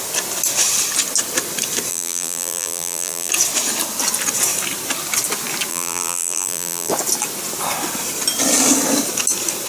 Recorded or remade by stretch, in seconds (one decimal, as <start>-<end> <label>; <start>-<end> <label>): 0.0-1.9 recorded; 1.9-3.3 remade; 3.3-5.7 recorded; 5.7-6.9 remade; 6.9-9.7 recorded